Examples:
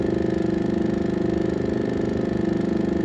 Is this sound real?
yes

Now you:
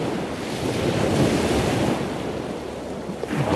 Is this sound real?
yes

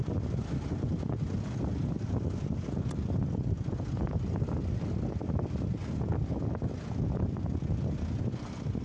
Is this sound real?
yes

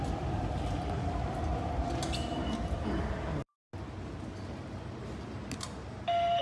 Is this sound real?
yes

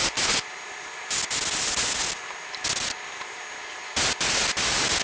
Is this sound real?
yes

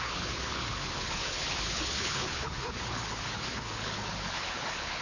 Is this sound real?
no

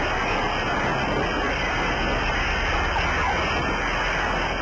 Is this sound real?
yes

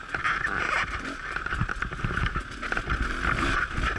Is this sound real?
yes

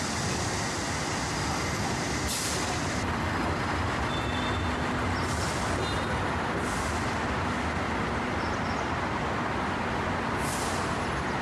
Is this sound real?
yes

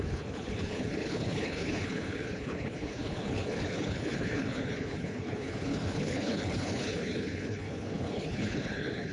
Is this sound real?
no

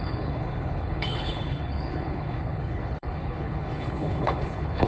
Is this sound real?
no